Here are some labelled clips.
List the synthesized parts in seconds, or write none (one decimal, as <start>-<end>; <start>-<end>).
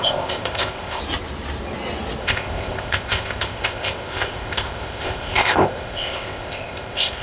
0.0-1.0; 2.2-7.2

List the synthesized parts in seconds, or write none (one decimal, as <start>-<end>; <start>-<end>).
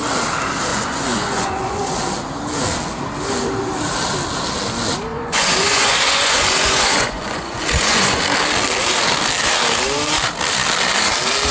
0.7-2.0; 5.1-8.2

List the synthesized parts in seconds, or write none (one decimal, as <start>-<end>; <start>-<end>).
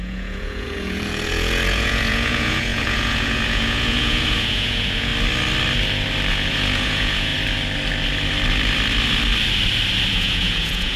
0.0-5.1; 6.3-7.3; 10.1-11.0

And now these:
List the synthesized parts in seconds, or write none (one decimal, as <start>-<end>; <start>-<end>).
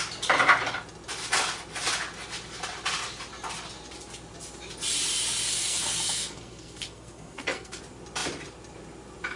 5.5-7.8